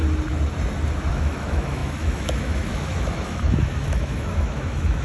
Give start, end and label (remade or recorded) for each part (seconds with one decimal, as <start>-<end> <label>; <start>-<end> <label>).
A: 0.0-1.1 recorded; 1.1-5.0 remade